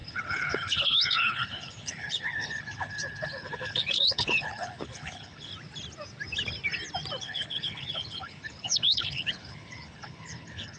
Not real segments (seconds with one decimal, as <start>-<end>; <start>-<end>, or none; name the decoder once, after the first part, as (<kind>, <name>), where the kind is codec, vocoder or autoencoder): 0.0-5.5 (codec, HILCodec); 7.2-10.8